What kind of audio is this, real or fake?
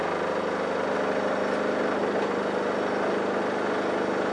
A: real